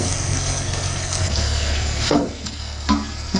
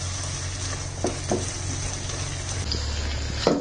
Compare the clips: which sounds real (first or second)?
second